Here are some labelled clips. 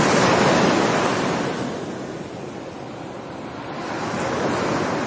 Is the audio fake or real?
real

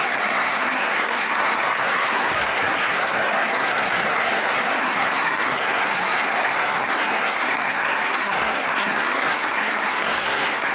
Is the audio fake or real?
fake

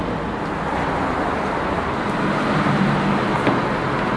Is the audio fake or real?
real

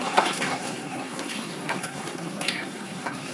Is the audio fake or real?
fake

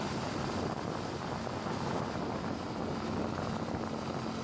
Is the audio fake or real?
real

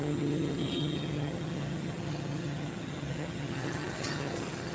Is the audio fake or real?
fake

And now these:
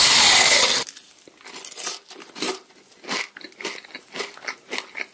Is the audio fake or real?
real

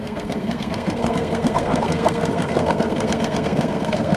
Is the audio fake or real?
fake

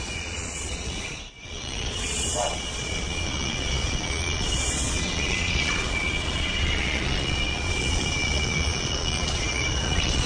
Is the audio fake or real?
fake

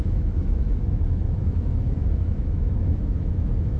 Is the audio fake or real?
fake